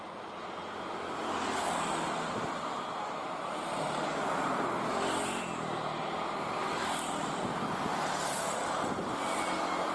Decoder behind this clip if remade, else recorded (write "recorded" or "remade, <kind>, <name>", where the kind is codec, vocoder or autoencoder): recorded